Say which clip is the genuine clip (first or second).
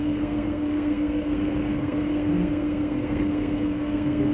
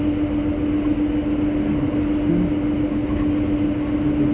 second